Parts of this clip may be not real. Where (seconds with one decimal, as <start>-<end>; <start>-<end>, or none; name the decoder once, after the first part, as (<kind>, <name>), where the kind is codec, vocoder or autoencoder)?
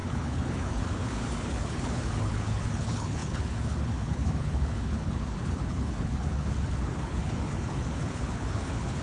0.0-9.0 (codec, HILCodec)